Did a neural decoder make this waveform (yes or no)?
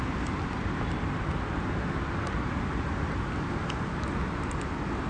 no